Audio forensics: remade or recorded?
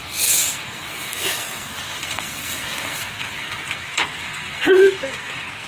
remade